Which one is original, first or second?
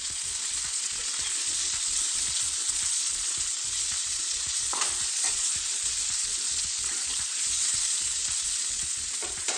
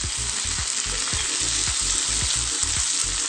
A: second